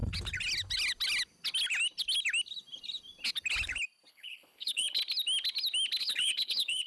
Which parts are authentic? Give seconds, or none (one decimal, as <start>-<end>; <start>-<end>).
0.0-4.1; 5.0-6.0